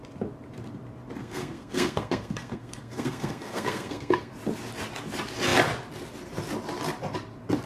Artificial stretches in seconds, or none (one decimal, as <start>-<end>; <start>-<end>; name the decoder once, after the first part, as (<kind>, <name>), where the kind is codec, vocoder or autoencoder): 1.2-4.3 (codec, SNAC)